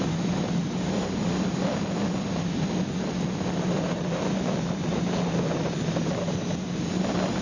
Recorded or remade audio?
recorded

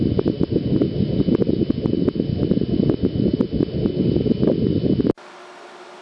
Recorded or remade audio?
recorded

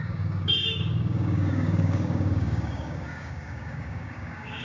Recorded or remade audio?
remade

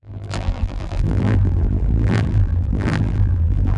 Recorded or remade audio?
remade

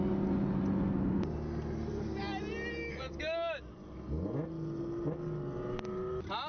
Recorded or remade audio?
recorded